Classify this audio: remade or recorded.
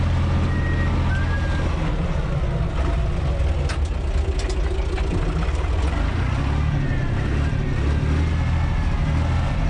recorded